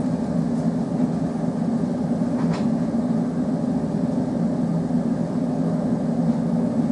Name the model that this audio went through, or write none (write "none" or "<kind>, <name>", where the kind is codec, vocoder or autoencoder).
none